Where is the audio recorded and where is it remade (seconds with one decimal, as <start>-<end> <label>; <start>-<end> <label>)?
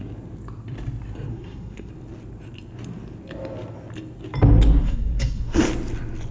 0.0-1.3 recorded; 1.3-1.9 remade; 1.9-4.8 recorded; 4.8-5.6 remade; 5.6-6.3 recorded